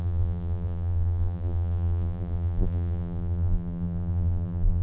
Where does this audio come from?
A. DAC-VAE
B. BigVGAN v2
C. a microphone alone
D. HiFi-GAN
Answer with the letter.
B